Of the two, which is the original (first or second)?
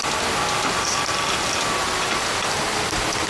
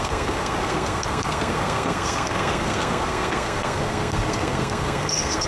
first